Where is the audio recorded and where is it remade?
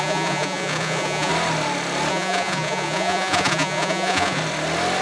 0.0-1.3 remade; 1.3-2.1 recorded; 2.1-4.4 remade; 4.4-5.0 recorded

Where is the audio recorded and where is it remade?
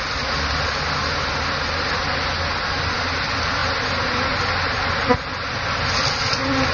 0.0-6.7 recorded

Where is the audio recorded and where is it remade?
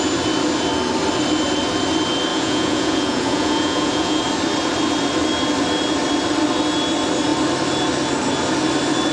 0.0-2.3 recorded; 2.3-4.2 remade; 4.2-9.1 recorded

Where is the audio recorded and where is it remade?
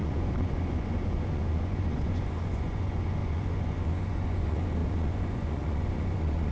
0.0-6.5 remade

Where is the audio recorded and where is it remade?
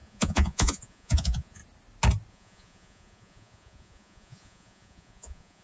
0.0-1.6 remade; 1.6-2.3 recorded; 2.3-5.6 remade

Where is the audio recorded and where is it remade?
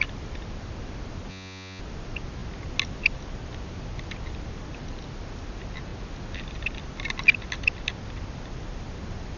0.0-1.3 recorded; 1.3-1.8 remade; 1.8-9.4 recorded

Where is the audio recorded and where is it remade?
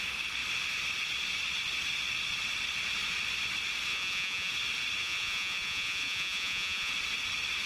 0.0-3.9 recorded; 3.9-4.5 remade; 4.5-5.0 recorded; 5.0-6.9 remade; 6.9-7.7 recorded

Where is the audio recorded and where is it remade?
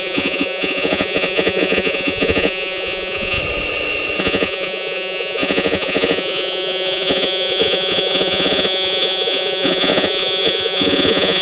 0.0-3.4 remade; 3.4-4.2 recorded; 4.2-11.4 remade